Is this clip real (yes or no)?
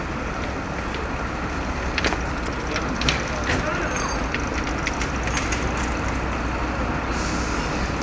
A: yes